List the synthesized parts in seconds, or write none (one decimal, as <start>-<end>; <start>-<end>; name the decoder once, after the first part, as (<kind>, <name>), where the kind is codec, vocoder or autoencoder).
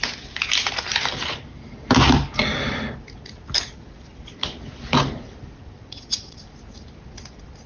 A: 5.6-6.4 (vocoder, WaveNeXt)